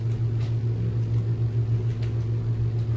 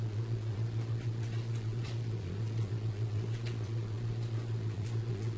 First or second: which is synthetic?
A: second